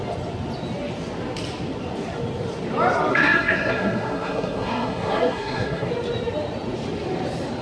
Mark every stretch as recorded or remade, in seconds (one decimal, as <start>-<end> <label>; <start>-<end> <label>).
0.0-3.1 recorded; 3.1-5.9 remade; 5.9-7.6 recorded